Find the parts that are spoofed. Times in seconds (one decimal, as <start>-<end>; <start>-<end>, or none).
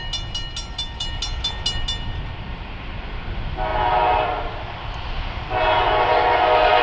none